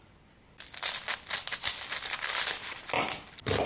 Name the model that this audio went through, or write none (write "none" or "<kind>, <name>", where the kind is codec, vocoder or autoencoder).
none